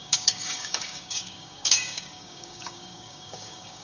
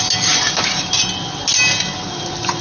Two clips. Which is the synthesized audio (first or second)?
first